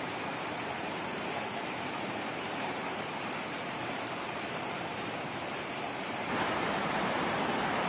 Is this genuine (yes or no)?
no